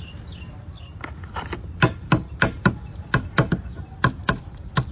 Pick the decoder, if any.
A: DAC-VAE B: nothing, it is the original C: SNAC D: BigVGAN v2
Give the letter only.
B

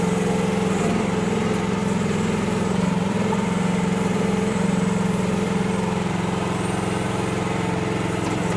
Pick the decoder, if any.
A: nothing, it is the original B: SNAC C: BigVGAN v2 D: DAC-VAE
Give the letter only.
C